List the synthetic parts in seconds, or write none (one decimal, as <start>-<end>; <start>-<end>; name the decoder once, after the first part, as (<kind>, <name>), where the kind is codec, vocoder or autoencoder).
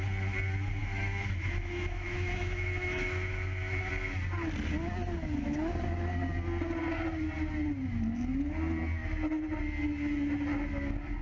0.8-3.9 (autoencoder, DAC-VAE)